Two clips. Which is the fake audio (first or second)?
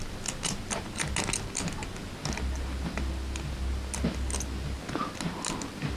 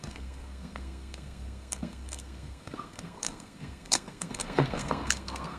second